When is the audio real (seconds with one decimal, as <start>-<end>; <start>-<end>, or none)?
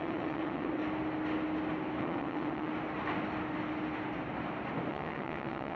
0.8-2.0; 2.7-4.9